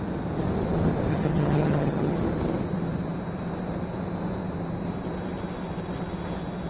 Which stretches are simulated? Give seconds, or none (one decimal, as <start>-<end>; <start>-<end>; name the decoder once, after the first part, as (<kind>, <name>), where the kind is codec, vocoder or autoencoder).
1.1-2.2 (vocoder, HiFi-GAN)